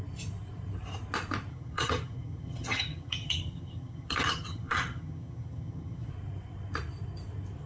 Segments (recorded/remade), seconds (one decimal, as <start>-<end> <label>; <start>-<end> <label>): 0.0-1.5 recorded; 1.5-6.1 remade; 6.1-7.7 recorded